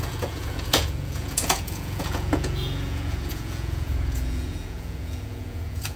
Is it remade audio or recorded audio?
remade